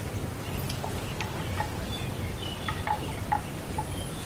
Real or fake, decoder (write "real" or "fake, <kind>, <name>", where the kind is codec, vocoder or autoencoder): real